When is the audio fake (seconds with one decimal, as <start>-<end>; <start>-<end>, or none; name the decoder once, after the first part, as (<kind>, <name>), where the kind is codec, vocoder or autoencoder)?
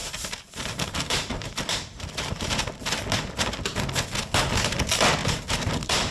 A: 0.0-2.5 (vocoder, BigVGAN v2); 5.2-6.1